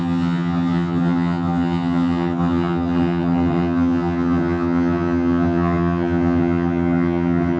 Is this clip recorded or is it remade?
remade